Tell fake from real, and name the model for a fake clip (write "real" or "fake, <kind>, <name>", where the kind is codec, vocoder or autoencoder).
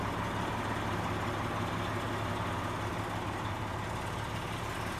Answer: real